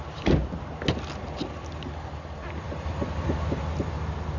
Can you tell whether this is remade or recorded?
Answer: recorded